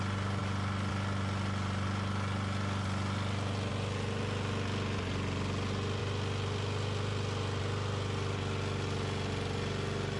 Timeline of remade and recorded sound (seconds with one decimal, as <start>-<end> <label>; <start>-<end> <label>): 0.0-10.2 recorded